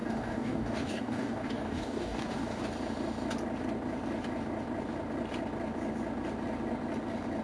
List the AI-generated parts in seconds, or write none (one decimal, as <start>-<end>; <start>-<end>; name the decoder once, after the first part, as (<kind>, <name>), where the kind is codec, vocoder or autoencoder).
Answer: 0.0-2.6 (codec, DAC)

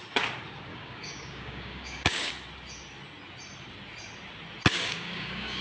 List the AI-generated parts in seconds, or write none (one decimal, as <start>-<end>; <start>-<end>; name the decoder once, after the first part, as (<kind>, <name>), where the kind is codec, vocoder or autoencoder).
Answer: 0.7-2.3 (codec, DAC); 4.7-5.6

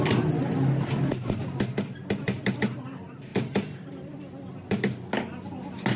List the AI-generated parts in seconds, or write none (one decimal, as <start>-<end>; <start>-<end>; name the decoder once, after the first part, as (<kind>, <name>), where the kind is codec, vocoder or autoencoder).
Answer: none

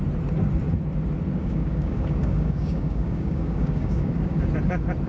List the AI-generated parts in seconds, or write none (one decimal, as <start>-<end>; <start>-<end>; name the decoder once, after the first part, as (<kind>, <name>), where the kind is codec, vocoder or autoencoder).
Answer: 1.3-4.4 (codec, DAC)

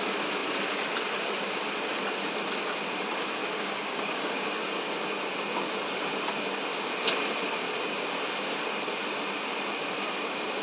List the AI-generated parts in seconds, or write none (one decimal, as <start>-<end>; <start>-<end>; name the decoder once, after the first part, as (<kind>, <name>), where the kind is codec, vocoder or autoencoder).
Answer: 3.4-4.9 (codec, DAC)

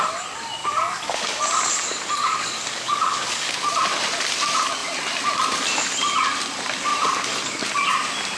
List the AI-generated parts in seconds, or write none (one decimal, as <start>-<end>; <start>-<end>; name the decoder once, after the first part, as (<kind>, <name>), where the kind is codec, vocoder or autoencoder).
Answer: 0.6-1.7 (codec, DAC); 2.2-3.5

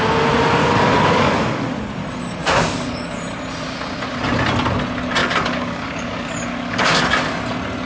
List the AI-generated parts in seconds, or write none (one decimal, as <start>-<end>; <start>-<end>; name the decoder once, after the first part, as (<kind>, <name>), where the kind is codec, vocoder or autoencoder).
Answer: 0.6-1.8 (codec, DAC); 2.4-3.2; 5.2-7.0

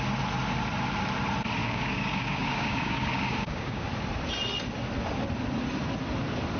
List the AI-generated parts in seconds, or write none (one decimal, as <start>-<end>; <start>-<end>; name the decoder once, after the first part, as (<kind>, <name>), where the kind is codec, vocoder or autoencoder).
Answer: 1.6-3.9 (codec, DAC)